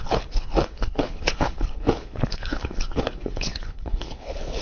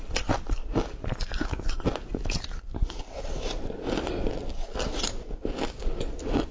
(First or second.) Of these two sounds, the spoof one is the first